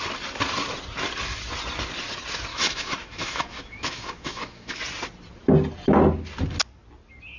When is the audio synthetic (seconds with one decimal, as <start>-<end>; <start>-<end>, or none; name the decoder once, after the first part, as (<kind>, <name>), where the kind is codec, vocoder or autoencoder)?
2.5-4.8 (autoencoder, DAC-VAE)